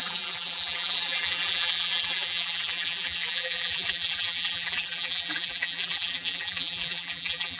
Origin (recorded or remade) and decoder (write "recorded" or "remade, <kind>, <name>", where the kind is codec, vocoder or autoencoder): remade, vocoder, BigVGAN v2